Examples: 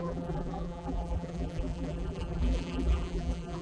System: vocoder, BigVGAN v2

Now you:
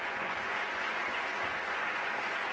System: vocoder, Vocos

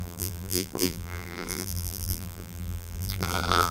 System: vocoder, BigVGAN v2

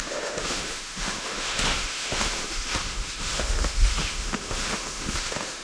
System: autoencoder, DAC-VAE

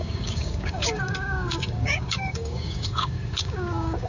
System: codec, DAC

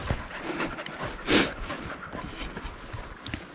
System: none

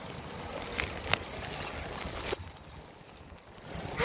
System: none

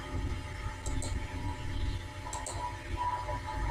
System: none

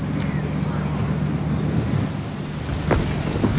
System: none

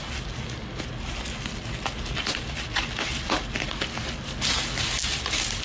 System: none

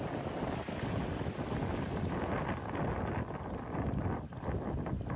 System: none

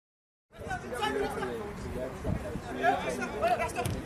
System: none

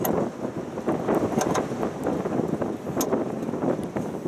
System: none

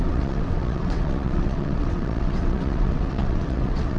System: vocoder, WaveNeXt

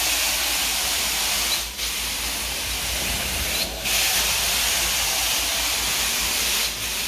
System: none